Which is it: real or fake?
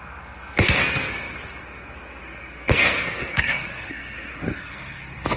fake